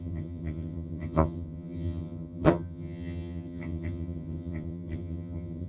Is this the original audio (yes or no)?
no